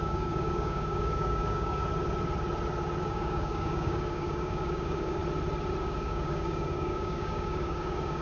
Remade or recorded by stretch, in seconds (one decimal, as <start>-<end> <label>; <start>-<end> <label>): 0.0-1.8 remade; 1.8-3.0 recorded; 3.0-5.2 remade; 5.2-5.8 recorded; 5.8-8.2 remade

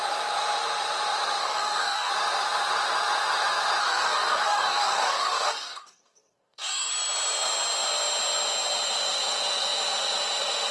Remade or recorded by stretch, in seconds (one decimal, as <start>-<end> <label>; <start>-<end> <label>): 0.0-1.4 recorded; 1.4-2.1 remade; 2.1-3.8 recorded; 3.8-6.9 remade; 6.9-10.7 recorded

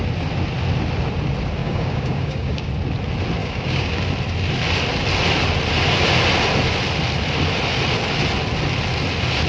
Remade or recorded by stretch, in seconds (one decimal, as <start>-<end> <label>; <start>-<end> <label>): 0.0-1.6 recorded; 1.6-2.7 remade; 2.7-3.4 recorded; 3.4-4.0 remade; 4.0-9.5 recorded

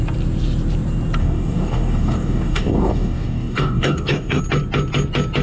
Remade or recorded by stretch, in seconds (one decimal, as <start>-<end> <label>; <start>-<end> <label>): 0.0-1.2 recorded; 1.2-4.4 remade; 4.4-5.4 recorded

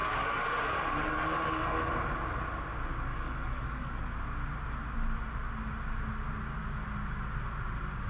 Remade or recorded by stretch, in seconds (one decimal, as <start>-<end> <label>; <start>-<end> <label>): 0.0-1.9 remade; 1.9-3.1 recorded; 3.1-4.0 remade; 4.0-8.1 recorded

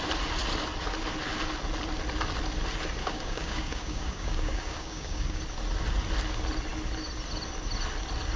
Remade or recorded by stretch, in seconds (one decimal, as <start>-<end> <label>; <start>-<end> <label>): 0.0-3.0 recorded; 3.0-5.4 remade; 5.4-8.4 recorded

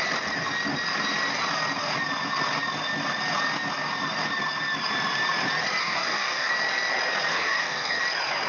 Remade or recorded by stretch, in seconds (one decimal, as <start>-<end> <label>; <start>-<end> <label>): 0.0-5.8 recorded; 5.8-6.5 remade; 6.5-7.3 recorded; 7.3-8.0 remade; 8.0-8.5 recorded